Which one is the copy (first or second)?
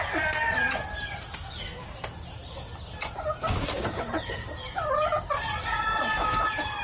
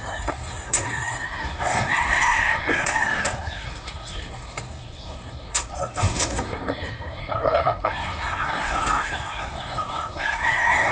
second